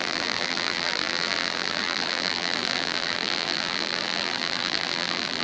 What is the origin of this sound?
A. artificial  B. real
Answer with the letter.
A